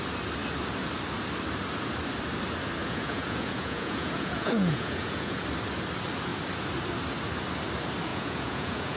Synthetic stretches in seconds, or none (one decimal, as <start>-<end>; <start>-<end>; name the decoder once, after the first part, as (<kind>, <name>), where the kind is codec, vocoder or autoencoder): 2.8-5.4 (vocoder, Vocos); 8.1-9.0

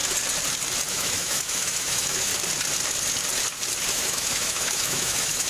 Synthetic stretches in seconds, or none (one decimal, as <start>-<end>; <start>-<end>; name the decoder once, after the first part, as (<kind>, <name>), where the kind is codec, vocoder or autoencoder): 0.9-2.3 (autoencoder, DAC-VAE); 3.9-5.5

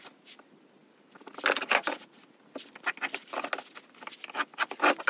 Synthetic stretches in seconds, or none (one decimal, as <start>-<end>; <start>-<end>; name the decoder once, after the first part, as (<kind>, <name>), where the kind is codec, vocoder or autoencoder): none

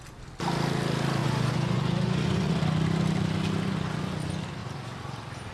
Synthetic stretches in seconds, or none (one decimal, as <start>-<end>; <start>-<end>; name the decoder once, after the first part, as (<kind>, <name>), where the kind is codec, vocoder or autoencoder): 1.2-2.6 (vocoder, Vocos)

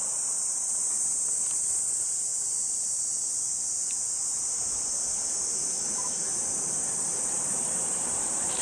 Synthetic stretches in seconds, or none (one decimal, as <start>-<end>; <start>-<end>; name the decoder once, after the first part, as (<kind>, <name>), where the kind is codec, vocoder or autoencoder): 0.0-2.3 (vocoder, BigVGAN v2); 7.2-8.6

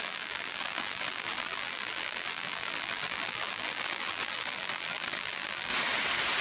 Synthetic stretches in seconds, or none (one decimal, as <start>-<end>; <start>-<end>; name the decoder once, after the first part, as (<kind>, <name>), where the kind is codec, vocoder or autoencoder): 0.0-5.7 (vocoder, BigVGAN v2)

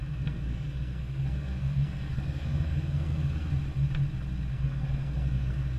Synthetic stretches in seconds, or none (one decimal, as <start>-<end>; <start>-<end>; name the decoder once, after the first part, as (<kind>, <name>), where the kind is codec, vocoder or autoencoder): 0.0-3.5 (codec, SNAC); 4.5-5.8